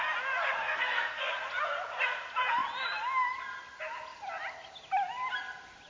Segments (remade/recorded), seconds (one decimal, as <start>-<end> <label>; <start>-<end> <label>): 0.0-0.6 recorded; 0.6-1.3 remade; 1.3-5.9 recorded